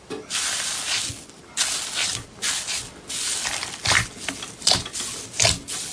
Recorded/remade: recorded